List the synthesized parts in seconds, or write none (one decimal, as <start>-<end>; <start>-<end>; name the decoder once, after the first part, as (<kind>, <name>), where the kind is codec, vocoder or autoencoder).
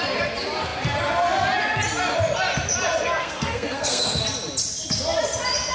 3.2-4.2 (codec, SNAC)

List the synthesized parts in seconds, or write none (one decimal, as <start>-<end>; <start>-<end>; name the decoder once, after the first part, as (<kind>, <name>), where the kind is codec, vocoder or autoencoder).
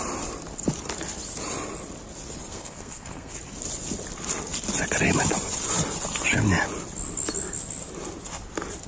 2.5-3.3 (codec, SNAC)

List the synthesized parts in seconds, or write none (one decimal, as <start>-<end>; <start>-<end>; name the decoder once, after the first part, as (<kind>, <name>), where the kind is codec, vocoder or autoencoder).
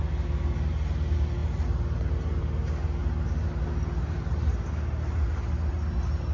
none